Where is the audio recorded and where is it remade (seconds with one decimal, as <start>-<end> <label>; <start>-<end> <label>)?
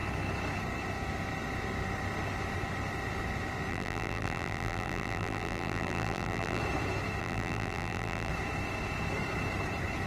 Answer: 0.0-3.7 recorded; 3.7-6.6 remade; 6.6-7.2 recorded; 7.2-8.3 remade; 8.3-10.1 recorded